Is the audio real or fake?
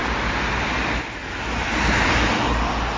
real